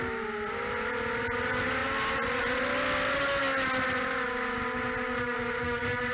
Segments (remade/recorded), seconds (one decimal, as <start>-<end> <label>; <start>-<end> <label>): 0.0-6.1 recorded